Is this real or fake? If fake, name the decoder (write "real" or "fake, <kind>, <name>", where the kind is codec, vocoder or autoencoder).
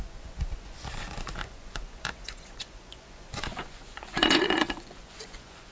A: fake, vocoder, Vocos